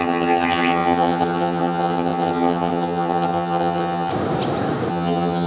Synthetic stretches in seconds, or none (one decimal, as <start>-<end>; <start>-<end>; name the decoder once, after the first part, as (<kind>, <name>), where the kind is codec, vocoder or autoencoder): 0.0-4.1 (vocoder, HiFi-GAN); 4.9-5.5